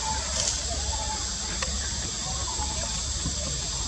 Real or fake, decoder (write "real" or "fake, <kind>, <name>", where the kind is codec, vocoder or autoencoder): real